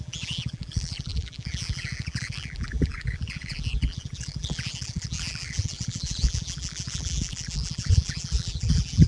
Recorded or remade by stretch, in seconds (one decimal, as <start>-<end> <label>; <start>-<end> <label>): 0.0-9.1 remade